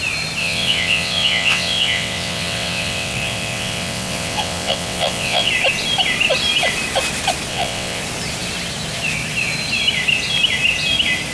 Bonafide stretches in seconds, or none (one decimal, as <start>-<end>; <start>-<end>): 0.0-0.4; 5.5-7.5; 8.0-11.3

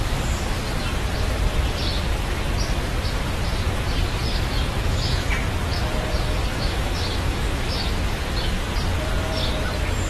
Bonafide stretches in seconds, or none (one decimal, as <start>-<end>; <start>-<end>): 0.0-4.3; 5.3-6.5; 7.9-10.1